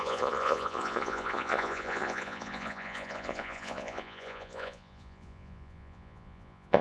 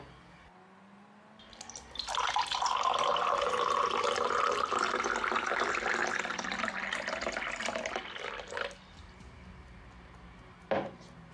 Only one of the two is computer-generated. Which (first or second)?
first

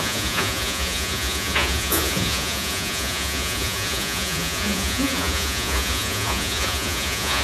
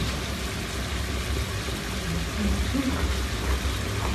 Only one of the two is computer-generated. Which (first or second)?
first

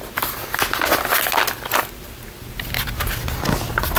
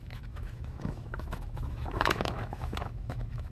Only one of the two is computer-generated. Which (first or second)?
second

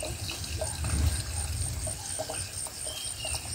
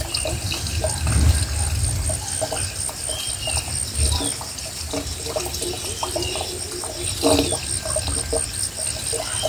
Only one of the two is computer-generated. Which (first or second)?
first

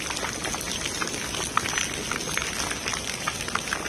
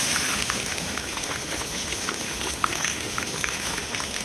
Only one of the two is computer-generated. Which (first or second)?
second